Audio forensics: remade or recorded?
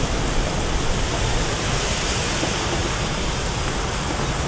recorded